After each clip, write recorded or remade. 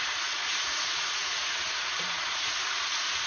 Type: remade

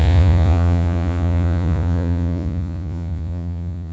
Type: remade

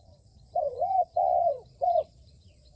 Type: remade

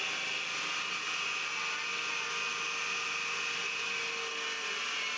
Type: recorded